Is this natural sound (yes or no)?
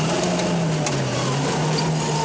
yes